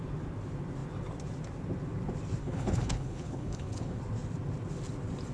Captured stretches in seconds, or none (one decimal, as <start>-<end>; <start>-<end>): 0.0-2.4; 4.0-5.3